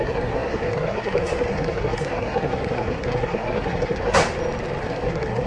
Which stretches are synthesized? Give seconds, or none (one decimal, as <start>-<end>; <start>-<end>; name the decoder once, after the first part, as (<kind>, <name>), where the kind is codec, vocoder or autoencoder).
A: 0.0-4.2 (codec, SNAC); 4.8-5.5